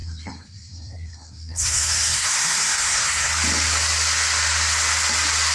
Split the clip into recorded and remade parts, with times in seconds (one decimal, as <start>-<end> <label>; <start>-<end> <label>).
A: 0.0-3.3 remade; 3.3-5.5 recorded